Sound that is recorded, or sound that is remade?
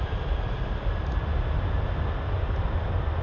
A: recorded